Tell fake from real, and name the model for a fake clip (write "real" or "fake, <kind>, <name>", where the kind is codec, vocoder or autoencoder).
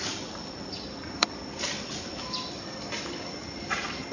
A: real